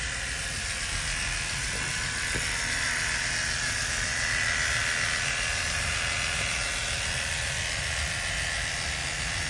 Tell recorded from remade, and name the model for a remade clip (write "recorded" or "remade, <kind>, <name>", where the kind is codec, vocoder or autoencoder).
recorded